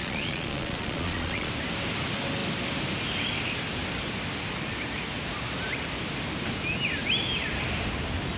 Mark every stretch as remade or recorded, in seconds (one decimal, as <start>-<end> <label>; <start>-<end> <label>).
0.0-1.5 remade; 1.5-8.4 recorded